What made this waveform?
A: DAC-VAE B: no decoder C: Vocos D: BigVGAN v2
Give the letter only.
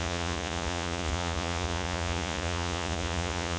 C